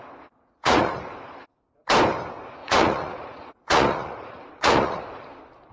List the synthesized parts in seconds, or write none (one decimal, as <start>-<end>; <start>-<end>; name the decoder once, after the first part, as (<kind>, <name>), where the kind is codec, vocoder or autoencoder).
0.4-1.0 (vocoder, Vocos); 2.6-5.0